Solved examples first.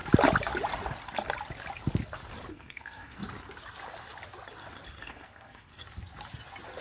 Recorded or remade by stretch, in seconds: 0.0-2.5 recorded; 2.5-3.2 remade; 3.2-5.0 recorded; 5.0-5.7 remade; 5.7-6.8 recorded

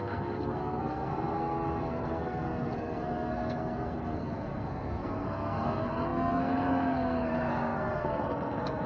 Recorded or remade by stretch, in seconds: 0.0-8.9 remade

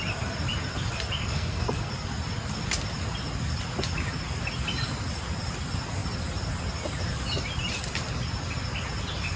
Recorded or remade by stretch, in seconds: 0.0-1.2 recorded; 1.2-1.9 remade; 1.9-9.4 recorded